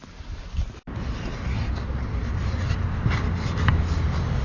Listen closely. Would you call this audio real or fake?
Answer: real